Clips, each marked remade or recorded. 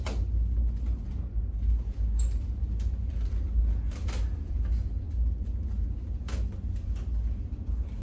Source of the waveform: recorded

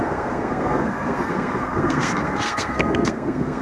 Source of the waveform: remade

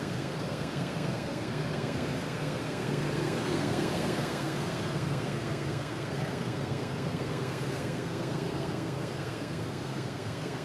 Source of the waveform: remade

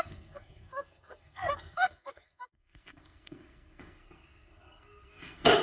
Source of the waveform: remade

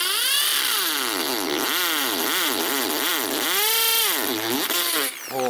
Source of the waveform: recorded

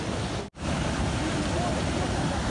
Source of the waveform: recorded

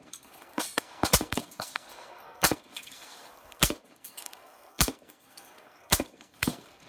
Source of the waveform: remade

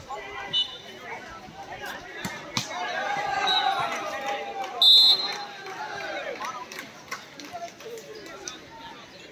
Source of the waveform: recorded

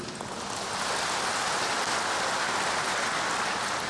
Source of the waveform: recorded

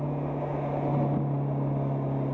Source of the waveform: recorded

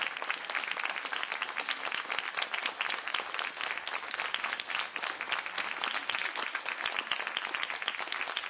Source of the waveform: recorded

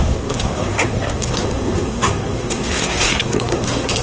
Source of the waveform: remade